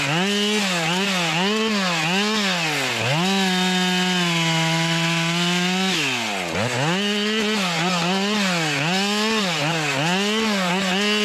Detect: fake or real real